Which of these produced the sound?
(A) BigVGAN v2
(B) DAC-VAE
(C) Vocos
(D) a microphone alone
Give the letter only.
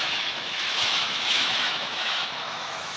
B